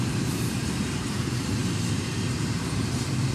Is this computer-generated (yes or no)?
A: yes